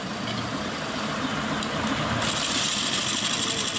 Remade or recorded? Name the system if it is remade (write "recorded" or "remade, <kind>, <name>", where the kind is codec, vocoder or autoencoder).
recorded